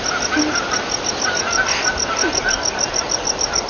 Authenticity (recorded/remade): recorded